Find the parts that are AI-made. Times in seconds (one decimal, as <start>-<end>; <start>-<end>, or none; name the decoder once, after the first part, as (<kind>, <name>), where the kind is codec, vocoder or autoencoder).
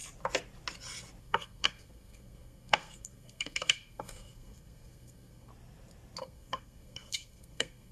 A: 1.2-5.5 (codec, SNAC); 6.2-7.9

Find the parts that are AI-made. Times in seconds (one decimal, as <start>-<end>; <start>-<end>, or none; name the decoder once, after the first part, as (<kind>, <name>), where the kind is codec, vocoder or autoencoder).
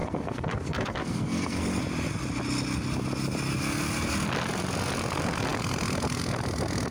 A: 0.0-1.8 (codec, SNAC)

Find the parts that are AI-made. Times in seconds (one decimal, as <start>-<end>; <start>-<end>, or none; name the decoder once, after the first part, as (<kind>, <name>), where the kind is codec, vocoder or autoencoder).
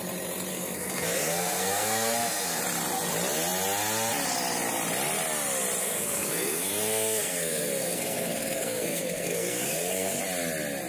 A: 0.5-2.6 (codec, SNAC); 5.8-10.2